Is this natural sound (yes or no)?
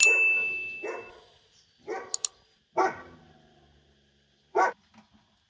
yes